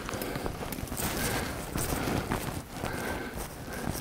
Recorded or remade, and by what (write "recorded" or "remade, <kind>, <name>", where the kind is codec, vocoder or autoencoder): recorded